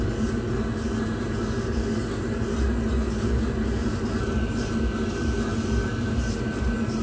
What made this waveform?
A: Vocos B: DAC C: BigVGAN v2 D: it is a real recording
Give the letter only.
D